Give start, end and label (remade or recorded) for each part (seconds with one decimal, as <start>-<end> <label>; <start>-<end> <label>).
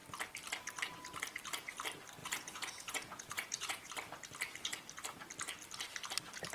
0.0-2.2 recorded; 2.2-3.9 remade; 3.9-6.5 recorded